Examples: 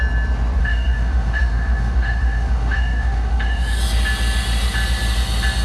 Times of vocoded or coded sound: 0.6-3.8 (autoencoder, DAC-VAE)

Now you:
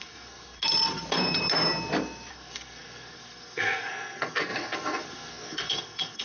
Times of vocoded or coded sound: 0.0-0.6 (codec, SNAC); 2.3-6.2

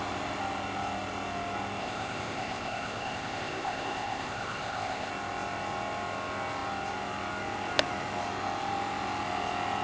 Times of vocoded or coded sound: 1.8-5.1 (codec, ZipCodec)

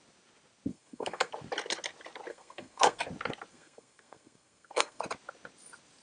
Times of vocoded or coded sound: 0.7-1.3 (codec, SNAC); 2.3-3.0; 3.5-5.0

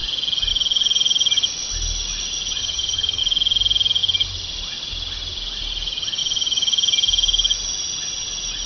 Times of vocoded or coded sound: 2.6-3.2 (vocoder, HiFi-GAN)

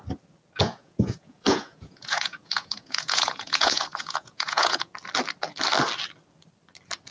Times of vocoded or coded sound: 0.6-4.9 (vocoder, Vocos)